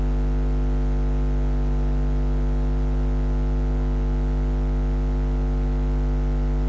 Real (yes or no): yes